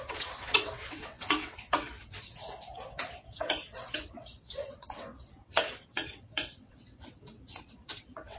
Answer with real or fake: fake